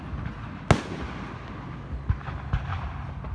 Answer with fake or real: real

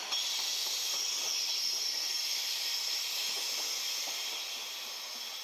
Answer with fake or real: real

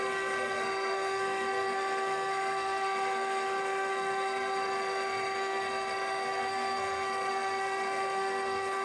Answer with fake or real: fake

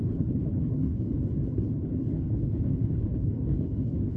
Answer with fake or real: fake